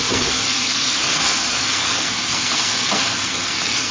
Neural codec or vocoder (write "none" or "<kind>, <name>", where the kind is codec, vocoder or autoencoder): codec, SNAC